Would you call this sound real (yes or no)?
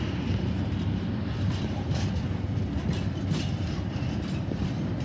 yes